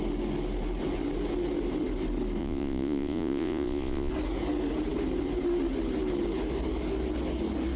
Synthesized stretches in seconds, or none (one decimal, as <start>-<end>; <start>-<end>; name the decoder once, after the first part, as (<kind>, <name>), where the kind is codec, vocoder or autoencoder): 2.4-4.1 (vocoder, Vocos)